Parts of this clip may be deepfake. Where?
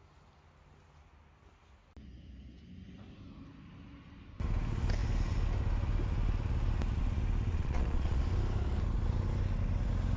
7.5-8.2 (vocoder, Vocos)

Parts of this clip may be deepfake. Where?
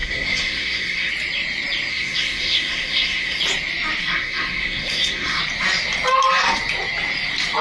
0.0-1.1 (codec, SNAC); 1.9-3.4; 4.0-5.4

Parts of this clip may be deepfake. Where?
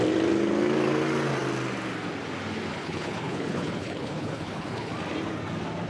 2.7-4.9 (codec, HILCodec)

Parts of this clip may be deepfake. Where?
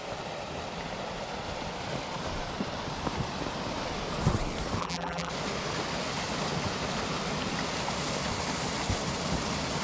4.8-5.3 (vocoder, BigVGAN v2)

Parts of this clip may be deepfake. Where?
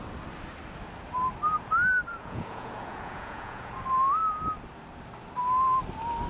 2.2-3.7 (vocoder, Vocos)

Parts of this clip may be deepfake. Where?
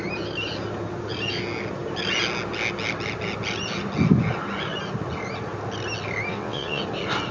6.3-6.8 (vocoder, WaveNeXt)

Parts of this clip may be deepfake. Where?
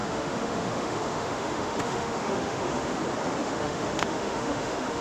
0.0-3.0 (autoencoder, DAC-VAE); 3.4-5.0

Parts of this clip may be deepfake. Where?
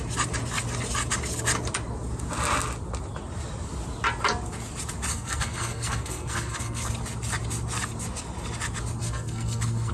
5.1-6.9 (codec, SNAC); 9.0-9.9